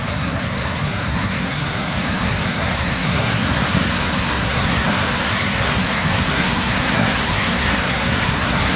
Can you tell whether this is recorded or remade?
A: remade